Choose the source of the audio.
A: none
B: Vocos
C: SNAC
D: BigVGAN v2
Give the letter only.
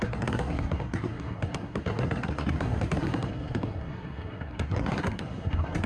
C